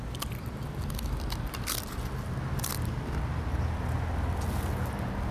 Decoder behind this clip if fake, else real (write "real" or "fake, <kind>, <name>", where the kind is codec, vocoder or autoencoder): real